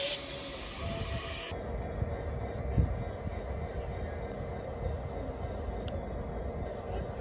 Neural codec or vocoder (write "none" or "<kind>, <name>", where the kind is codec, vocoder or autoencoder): none